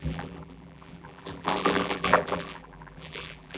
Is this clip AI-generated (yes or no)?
yes